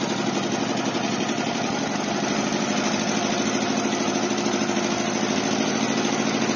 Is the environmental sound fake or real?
real